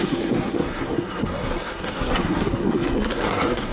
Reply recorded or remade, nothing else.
remade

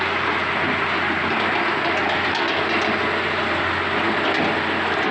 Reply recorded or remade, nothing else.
recorded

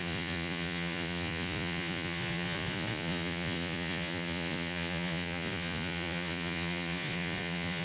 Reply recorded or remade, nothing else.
remade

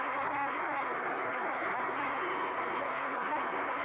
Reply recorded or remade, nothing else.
remade